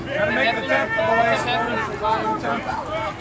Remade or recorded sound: recorded